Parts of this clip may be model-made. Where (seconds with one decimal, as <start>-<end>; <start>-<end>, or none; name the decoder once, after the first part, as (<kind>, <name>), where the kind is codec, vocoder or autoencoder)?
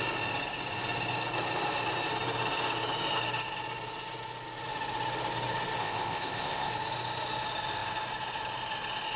5.8-6.7 (codec, ZipCodec)